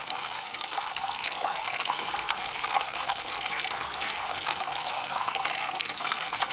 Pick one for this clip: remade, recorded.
remade